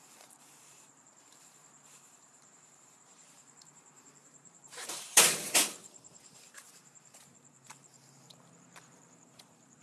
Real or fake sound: fake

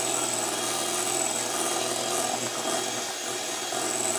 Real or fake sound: real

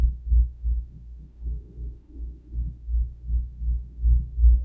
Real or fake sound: fake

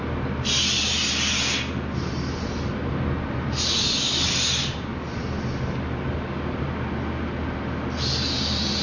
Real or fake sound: real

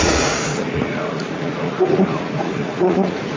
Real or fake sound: fake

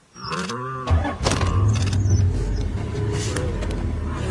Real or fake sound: real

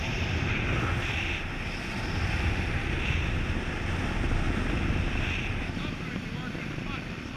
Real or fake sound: real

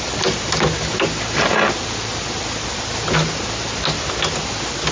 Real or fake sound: real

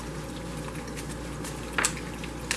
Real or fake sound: real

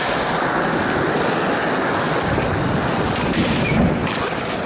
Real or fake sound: real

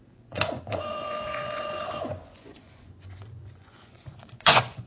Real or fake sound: fake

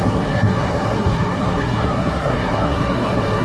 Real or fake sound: fake